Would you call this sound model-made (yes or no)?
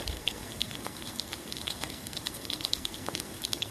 yes